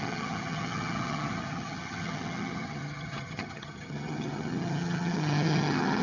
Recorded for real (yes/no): no